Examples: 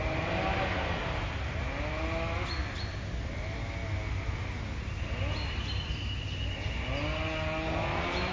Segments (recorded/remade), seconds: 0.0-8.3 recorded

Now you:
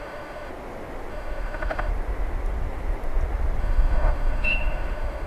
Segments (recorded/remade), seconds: 0.0-0.5 remade; 0.5-1.1 recorded; 1.1-1.9 remade; 1.9-3.6 recorded; 3.6-5.3 remade

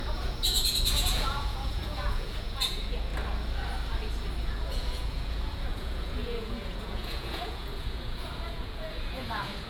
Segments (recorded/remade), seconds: 0.0-3.1 remade; 3.1-4.4 recorded; 4.4-9.7 remade

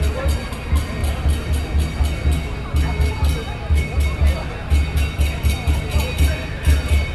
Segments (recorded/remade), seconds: 0.0-7.1 recorded

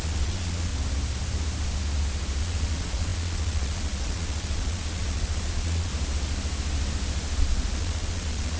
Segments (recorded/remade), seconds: 0.0-0.7 remade; 0.7-2.4 recorded; 2.4-5.9 remade; 5.9-7.4 recorded; 7.4-8.6 remade

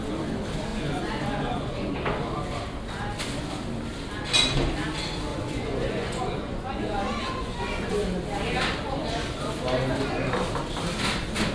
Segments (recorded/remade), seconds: 0.0-0.7 recorded; 0.7-1.9 remade; 1.9-5.3 recorded; 5.3-7.9 remade; 7.9-11.5 recorded

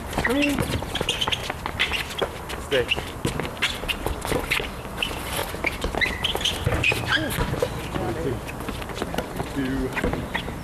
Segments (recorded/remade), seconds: 0.0-1.4 remade; 1.4-3.0 recorded; 3.0-5.4 remade; 5.4-7.5 recorded; 7.5-10.6 remade

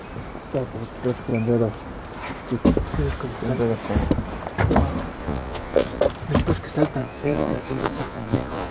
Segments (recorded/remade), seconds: 0.0-5.2 recorded; 5.2-6.0 remade; 6.0-7.0 recorded; 7.0-8.7 remade